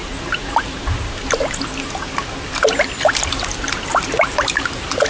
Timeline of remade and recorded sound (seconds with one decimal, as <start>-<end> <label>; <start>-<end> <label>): 0.0-5.1 recorded